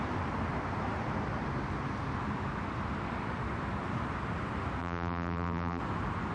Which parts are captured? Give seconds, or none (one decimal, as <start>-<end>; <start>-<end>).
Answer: 0.0-4.8; 5.8-6.3